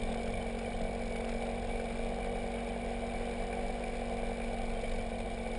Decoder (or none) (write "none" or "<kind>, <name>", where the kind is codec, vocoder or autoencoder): none